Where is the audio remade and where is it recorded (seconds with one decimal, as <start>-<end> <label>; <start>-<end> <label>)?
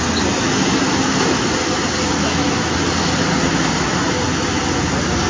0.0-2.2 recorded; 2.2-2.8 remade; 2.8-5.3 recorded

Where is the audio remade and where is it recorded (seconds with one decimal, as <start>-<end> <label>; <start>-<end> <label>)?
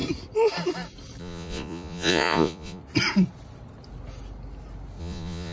0.0-1.2 recorded; 1.2-2.8 remade; 2.8-5.0 recorded; 5.0-5.5 remade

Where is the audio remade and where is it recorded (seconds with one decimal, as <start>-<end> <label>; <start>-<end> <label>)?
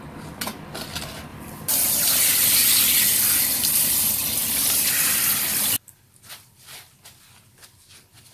0.0-1.3 recorded; 1.3-1.9 remade; 1.9-4.4 recorded; 4.4-7.9 remade; 7.9-8.3 recorded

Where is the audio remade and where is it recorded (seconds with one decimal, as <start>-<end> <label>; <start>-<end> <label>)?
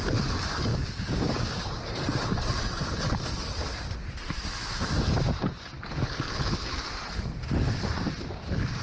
0.0-0.7 recorded; 0.7-1.5 remade; 1.5-8.8 recorded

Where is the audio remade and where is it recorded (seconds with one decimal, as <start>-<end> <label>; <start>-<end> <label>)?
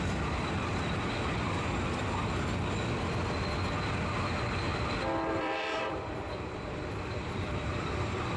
0.0-4.7 recorded; 4.7-8.4 remade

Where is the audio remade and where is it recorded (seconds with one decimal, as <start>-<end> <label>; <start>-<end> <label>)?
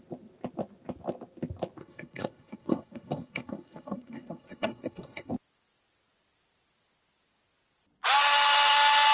0.0-1.8 recorded; 1.8-5.3 remade; 5.3-9.1 recorded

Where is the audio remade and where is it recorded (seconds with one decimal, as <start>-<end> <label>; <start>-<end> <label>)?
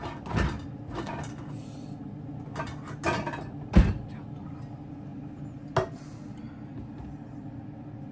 0.0-8.1 recorded